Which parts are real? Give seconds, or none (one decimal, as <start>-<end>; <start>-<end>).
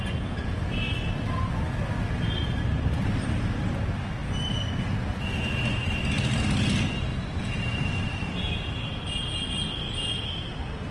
0.0-10.9